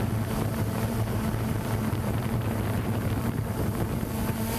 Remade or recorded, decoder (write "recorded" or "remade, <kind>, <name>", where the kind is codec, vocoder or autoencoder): remade, vocoder, BigVGAN v2